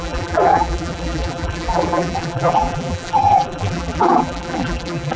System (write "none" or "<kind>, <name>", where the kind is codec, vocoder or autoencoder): vocoder, BigVGAN v2